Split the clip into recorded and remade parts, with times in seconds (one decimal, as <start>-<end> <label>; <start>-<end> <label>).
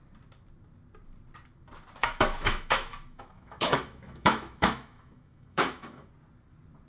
0.0-2.0 recorded; 2.0-6.1 remade; 6.1-6.9 recorded